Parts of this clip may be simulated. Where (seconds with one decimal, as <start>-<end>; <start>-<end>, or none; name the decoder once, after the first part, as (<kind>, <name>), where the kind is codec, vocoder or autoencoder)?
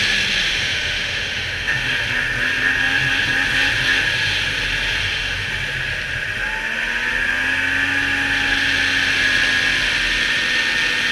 0.5-1.9 (autoencoder, DAC-VAE); 5.0-5.5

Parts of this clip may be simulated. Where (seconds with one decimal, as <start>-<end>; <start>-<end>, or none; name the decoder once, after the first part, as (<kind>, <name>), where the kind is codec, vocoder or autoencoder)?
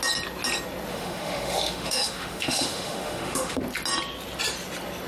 0.9-3.6 (autoencoder, DAC-VAE)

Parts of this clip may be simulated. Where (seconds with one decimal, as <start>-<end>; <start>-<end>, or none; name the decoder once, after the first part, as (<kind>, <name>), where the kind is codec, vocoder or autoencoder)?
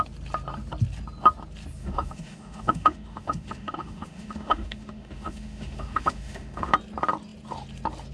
1.8-6.7 (autoencoder, DAC-VAE)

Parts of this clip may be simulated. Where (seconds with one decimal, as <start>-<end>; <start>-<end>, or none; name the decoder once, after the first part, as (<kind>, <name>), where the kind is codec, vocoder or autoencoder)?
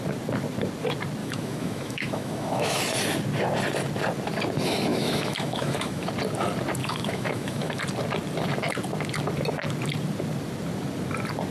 1.2-2.8 (autoencoder, DAC-VAE); 4.9-6.1; 6.8-7.8